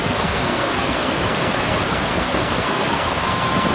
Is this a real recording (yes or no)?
no